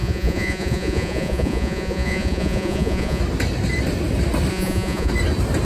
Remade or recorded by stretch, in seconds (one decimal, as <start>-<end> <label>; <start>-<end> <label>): 0.0-3.2 remade; 3.2-4.5 recorded; 4.5-5.1 remade; 5.1-5.6 recorded

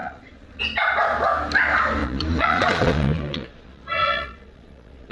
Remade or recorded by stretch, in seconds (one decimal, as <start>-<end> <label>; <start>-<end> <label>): 0.0-0.6 remade; 0.6-2.0 recorded; 2.0-5.1 remade

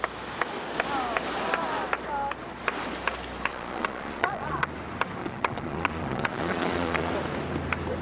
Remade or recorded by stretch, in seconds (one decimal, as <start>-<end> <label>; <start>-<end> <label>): 0.0-3.5 recorded; 3.5-4.7 remade; 4.7-5.2 recorded; 5.2-7.1 remade; 7.1-8.0 recorded